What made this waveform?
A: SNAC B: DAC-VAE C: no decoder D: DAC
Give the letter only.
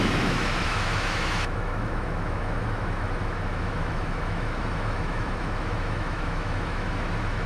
B